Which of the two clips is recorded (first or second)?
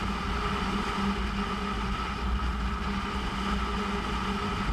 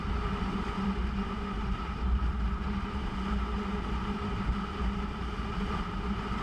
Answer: first